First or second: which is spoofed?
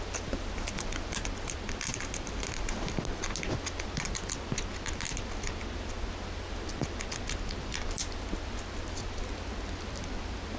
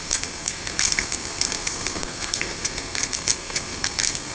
second